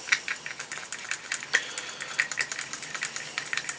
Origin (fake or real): real